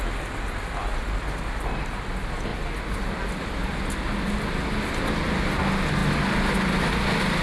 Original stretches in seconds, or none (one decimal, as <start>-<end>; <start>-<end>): 0.0-7.4